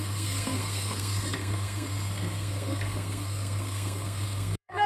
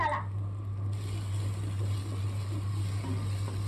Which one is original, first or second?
second